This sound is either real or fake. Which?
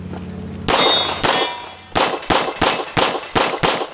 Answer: real